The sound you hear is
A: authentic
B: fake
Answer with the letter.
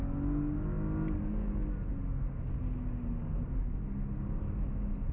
A